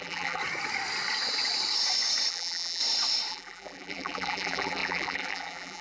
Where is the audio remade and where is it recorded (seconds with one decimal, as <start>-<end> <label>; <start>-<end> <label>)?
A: 0.0-0.4 remade; 0.4-2.3 recorded; 2.3-2.8 remade; 2.8-3.3 recorded; 3.3-5.8 remade